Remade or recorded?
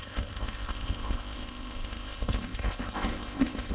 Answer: remade